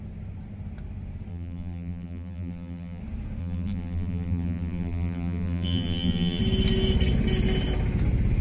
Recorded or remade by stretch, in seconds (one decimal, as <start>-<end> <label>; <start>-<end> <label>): 0.0-1.3 recorded; 1.3-3.0 remade; 3.0-3.4 recorded; 3.4-6.4 remade; 6.4-8.4 recorded